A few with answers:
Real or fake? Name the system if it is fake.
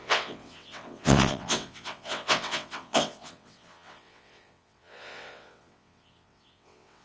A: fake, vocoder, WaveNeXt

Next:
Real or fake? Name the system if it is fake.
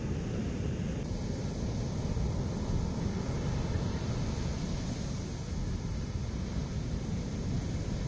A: real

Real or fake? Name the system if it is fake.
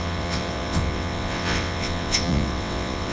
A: fake, vocoder, WaveNeXt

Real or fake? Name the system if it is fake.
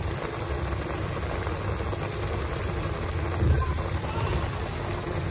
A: real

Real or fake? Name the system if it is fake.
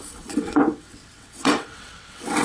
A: fake, vocoder, WaveNeXt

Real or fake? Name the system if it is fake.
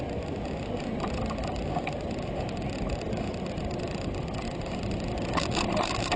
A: real